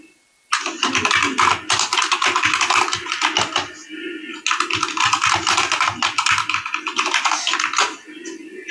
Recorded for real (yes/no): yes